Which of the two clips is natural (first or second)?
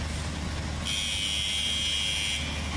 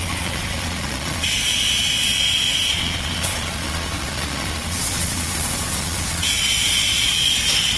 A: first